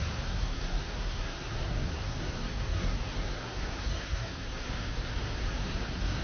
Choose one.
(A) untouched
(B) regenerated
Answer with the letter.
B